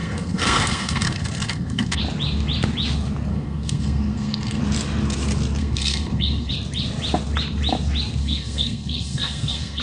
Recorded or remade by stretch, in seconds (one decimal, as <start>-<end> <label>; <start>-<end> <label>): 0.0-2.0 remade; 2.0-3.3 recorded; 3.3-4.6 remade; 4.6-5.6 recorded; 5.6-6.5 remade; 6.5-8.2 recorded; 8.2-9.8 remade